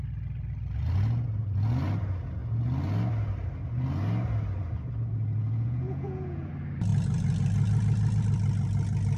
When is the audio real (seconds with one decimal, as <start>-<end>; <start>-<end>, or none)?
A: 0.0-5.4; 6.5-9.2